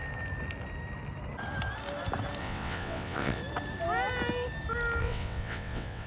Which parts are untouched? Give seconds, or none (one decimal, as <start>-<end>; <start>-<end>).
0.0-2.4; 3.4-5.0